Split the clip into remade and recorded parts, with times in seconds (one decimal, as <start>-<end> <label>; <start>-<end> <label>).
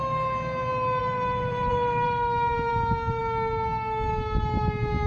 0.0-1.0 recorded; 1.0-2.7 remade; 2.7-5.1 recorded